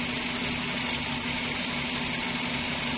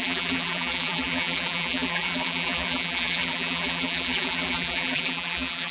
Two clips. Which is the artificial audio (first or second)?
second